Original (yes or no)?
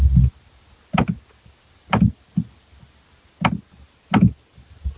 yes